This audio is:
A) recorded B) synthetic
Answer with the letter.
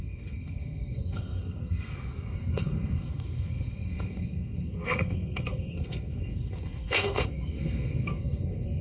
B